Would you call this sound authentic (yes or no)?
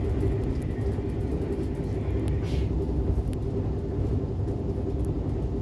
yes